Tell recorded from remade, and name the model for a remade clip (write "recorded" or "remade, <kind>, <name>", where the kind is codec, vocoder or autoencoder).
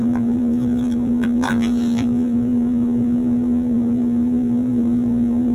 remade, vocoder, BigVGAN v2